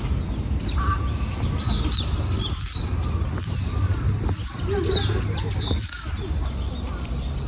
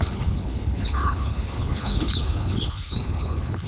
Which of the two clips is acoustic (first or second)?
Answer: first